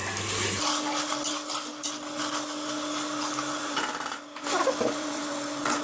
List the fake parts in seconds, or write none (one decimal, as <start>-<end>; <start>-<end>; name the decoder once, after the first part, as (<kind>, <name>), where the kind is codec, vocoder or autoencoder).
3.6-5.8 (vocoder, BigVGAN v2)